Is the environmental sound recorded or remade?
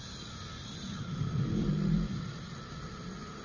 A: recorded